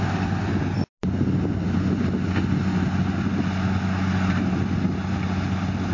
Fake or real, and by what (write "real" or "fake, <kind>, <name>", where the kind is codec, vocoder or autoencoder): real